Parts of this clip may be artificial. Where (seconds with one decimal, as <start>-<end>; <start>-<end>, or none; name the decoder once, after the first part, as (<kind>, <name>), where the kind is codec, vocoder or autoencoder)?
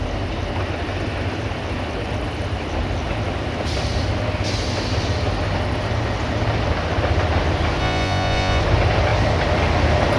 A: 7.8-8.6 (vocoder, Vocos)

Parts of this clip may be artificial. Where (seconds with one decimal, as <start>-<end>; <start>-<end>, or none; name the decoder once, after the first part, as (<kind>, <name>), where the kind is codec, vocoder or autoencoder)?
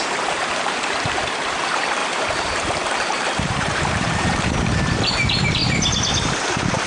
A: 0.0-5.6 (vocoder, BigVGAN v2); 6.2-6.9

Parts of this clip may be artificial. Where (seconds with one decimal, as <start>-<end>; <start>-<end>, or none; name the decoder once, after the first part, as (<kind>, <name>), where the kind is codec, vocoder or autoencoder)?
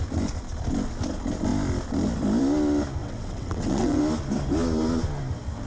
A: 3.0-4.0 (vocoder, WaveNeXt)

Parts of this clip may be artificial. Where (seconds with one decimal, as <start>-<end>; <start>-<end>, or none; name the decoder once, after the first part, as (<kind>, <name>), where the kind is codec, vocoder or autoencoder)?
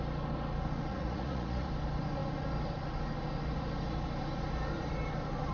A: 0.9-1.7 (vocoder, Vocos)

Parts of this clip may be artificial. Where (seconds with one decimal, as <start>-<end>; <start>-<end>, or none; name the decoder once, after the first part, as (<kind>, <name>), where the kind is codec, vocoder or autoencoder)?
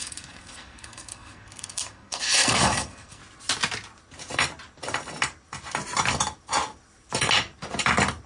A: 0.0-3.2 (codec, SNAC)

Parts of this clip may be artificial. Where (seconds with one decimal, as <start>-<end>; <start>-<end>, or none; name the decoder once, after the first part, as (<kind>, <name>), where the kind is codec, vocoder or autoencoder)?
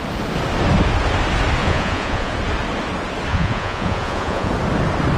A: 1.6-2.3 (vocoder, Vocos); 3.3-4.5